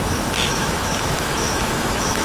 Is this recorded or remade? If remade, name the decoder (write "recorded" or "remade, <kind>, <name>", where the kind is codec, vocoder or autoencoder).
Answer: remade, autoencoder, DAC-VAE